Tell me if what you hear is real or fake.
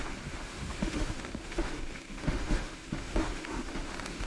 fake